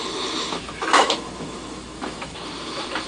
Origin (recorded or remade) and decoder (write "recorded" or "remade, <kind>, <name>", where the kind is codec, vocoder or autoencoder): remade, autoencoder, DAC-VAE